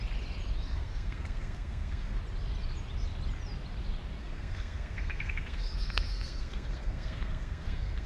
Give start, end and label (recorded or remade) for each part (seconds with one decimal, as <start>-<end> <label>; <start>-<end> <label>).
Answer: 0.0-0.7 recorded; 0.7-2.2 remade; 2.2-4.2 recorded; 4.2-8.1 remade